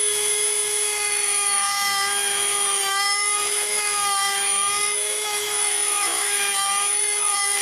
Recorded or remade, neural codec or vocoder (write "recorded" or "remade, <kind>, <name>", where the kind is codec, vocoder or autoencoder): remade, autoencoder, DAC-VAE